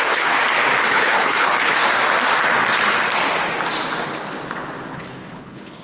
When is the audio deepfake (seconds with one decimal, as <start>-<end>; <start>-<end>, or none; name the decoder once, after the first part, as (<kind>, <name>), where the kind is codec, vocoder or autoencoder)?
0.0-0.4 (codec, HILCodec); 0.9-1.8; 4.9-5.8